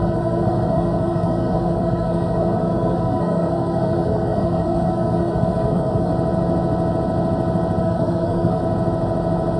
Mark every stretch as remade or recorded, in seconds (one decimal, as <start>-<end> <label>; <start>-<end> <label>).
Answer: 0.0-6.1 remade; 6.1-7.8 recorded; 7.8-8.6 remade; 8.6-9.6 recorded